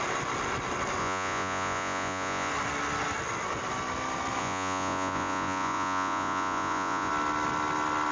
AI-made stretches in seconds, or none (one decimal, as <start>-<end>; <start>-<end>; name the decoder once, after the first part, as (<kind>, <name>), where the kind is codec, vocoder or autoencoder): 1.0-2.5 (vocoder, Vocos); 4.4-7.1